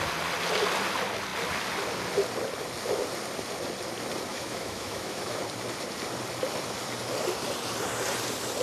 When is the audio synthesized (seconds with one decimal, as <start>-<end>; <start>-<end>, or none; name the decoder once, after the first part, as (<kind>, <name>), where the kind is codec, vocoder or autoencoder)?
4.3-5.4 (autoencoder, DAC-VAE)

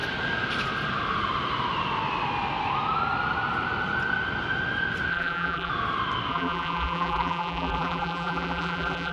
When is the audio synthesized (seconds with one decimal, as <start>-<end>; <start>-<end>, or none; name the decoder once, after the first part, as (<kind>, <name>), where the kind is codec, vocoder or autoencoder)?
5.1-5.7 (vocoder, BigVGAN v2); 6.3-9.1

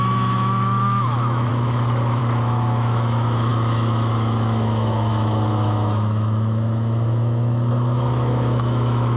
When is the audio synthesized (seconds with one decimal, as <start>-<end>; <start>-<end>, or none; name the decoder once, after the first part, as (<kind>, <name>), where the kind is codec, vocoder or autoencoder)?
0.0-9.2 (autoencoder, DAC-VAE)

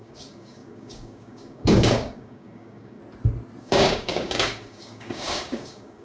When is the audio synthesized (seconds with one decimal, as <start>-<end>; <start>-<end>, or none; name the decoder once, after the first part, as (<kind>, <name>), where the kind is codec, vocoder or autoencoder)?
0.0-3.0 (codec, DAC); 3.6-6.0

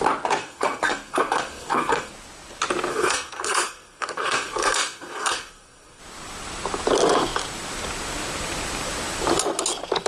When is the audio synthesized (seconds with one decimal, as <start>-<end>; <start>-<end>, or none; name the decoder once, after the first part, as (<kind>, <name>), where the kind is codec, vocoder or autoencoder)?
0.4-2.1 (codec, SNAC); 2.9-6.0

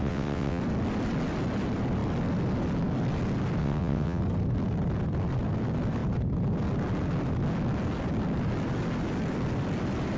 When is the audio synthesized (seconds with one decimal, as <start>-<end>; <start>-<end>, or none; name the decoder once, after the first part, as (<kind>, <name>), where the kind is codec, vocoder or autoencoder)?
0.0-0.6 (vocoder, WaveNeXt); 3.6-4.2

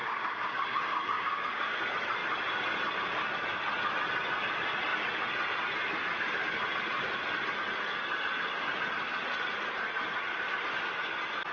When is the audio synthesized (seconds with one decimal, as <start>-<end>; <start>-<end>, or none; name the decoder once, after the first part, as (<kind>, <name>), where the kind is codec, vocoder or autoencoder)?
0.0-1.8 (codec, DAC)